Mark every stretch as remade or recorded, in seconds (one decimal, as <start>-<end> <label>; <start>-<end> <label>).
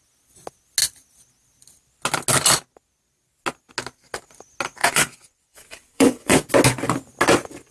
0.0-4.8 recorded; 4.8-6.5 remade; 6.5-7.7 recorded